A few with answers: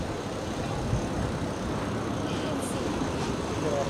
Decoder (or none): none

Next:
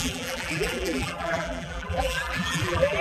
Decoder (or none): vocoder, BigVGAN v2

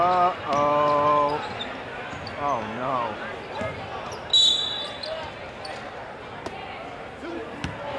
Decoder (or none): none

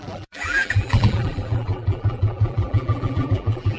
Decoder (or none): vocoder, BigVGAN v2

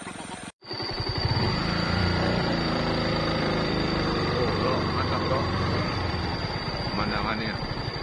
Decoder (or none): vocoder, BigVGAN v2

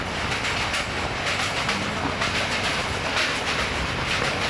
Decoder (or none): none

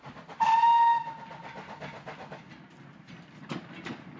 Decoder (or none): none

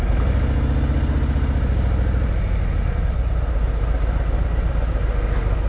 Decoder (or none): none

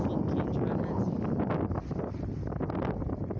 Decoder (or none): none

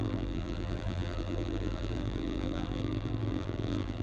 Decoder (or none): vocoder, BigVGAN v2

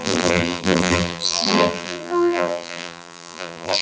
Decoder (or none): vocoder, BigVGAN v2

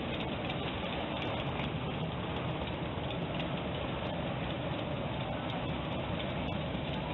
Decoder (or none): none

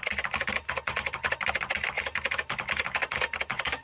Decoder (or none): vocoder, BigVGAN v2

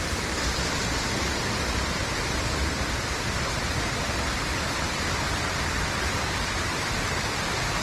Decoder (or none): vocoder, BigVGAN v2